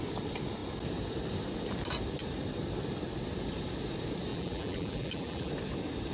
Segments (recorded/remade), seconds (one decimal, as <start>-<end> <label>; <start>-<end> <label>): 0.0-4.3 recorded; 4.3-5.5 remade; 5.5-6.1 recorded